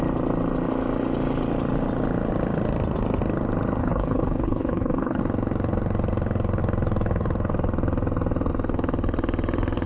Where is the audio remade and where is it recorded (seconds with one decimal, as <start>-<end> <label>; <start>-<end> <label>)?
0.0-3.8 recorded; 3.8-5.2 remade; 5.2-9.9 recorded